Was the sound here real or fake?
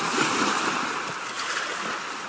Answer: real